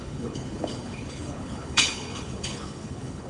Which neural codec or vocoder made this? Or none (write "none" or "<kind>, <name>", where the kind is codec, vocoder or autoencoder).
codec, HILCodec